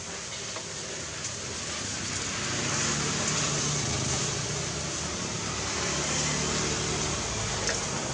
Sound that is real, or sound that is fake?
real